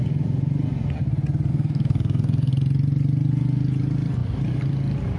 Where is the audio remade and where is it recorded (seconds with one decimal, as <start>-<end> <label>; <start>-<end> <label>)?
0.0-1.5 recorded; 1.5-2.5 remade; 2.5-5.2 recorded